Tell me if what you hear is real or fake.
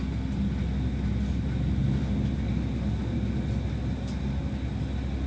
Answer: real